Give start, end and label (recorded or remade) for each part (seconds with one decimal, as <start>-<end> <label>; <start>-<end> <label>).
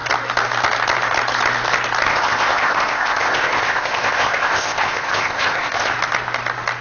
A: 0.0-2.1 recorded; 2.1-5.9 remade; 5.9-6.8 recorded